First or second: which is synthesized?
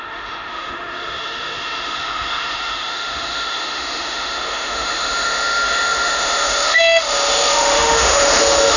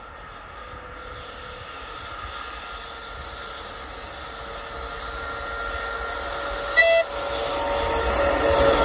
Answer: first